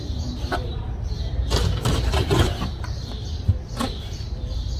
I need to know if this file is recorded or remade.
remade